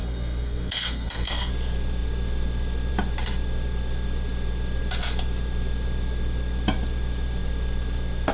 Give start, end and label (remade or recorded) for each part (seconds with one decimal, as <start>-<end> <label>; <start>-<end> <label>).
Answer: 0.0-1.5 remade; 1.5-8.3 recorded